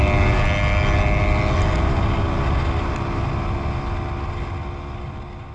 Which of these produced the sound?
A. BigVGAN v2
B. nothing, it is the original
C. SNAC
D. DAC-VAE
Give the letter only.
B